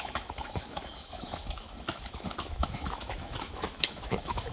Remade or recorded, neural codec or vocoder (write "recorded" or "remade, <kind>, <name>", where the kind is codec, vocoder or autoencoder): remade, autoencoder, DAC-VAE